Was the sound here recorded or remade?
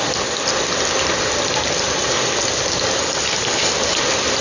recorded